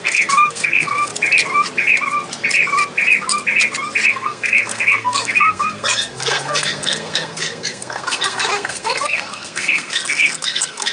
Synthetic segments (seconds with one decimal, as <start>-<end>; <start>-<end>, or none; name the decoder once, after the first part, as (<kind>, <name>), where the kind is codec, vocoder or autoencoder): 0.0-1.1 (codec, SNAC); 4.1-10.9